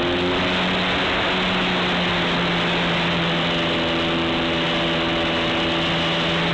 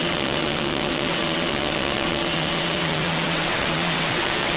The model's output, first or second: second